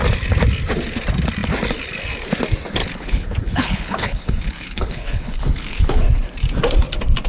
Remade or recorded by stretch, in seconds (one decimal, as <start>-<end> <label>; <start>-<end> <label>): 0.0-2.8 recorded; 2.8-6.0 remade; 6.0-7.3 recorded